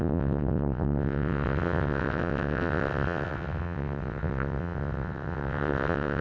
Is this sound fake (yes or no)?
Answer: yes